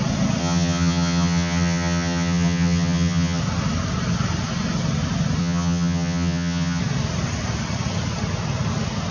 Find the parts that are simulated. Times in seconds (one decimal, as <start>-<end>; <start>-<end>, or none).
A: 0.4-3.4; 5.4-6.8